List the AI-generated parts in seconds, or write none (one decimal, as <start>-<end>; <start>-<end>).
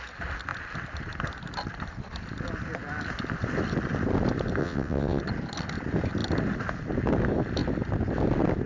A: 4.6-5.2